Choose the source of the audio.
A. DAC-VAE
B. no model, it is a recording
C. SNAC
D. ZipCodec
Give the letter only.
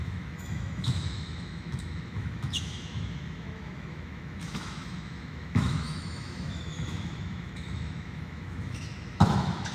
A